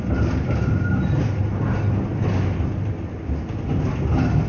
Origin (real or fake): real